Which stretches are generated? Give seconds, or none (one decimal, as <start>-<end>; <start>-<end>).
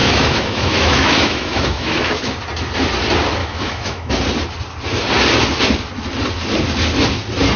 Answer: 0.0-2.4; 3.4-4.1